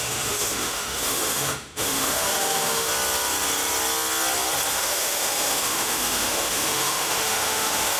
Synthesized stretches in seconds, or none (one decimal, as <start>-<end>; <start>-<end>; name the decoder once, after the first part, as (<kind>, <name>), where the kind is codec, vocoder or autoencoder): 0.0-2.9 (autoencoder, DAC-VAE); 4.7-8.0